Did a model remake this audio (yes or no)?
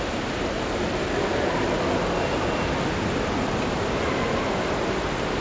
no